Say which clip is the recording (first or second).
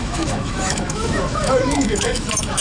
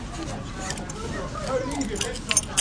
second